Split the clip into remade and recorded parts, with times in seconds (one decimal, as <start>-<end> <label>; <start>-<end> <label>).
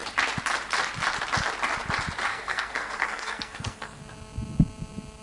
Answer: 0.0-2.3 recorded; 2.3-4.0 remade; 4.0-5.2 recorded